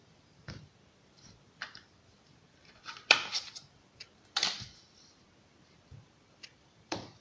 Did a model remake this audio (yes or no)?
yes